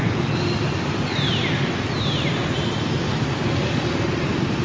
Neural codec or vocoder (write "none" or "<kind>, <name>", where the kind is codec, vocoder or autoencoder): none